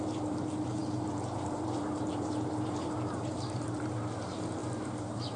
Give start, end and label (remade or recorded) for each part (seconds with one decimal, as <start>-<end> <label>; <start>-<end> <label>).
0.0-5.4 remade